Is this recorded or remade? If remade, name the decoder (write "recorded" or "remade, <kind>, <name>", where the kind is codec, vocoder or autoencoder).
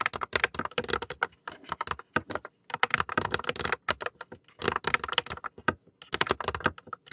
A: recorded